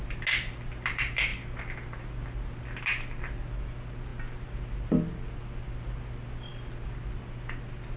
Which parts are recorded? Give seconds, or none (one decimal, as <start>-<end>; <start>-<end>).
0.0-8.0